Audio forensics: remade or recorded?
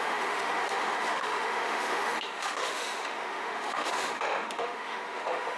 remade